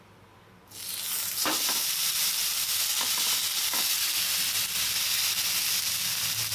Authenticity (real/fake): real